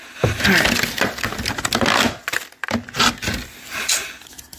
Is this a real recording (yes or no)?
yes